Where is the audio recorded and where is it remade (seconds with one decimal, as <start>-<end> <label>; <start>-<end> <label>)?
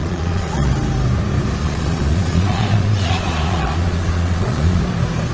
0.0-0.7 remade; 0.7-1.6 recorded; 1.6-4.8 remade; 4.8-5.3 recorded